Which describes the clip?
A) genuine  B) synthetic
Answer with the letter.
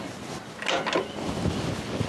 A